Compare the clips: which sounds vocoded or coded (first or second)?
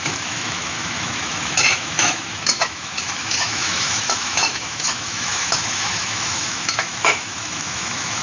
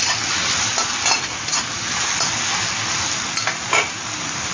first